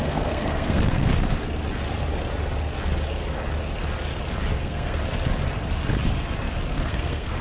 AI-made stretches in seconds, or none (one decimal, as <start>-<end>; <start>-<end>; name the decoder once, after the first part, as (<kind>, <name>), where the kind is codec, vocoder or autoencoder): 0.0-1.1 (codec, SNAC); 4.6-5.0; 6.7-7.4